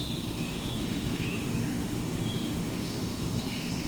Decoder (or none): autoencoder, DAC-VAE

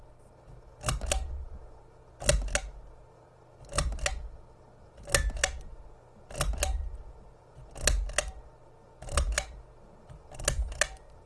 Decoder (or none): none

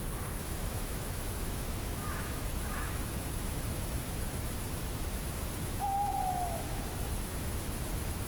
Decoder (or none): autoencoder, DAC-VAE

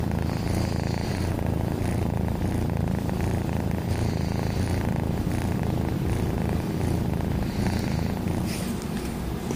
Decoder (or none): none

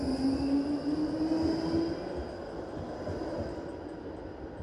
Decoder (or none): none